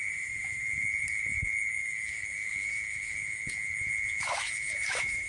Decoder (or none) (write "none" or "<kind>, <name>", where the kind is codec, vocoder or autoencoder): autoencoder, DAC-VAE